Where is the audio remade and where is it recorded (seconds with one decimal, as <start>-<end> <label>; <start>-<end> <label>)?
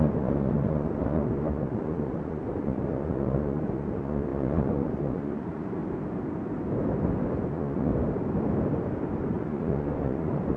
0.0-5.8 remade; 5.8-7.5 recorded; 7.5-7.9 remade; 7.9-9.3 recorded; 9.3-10.6 remade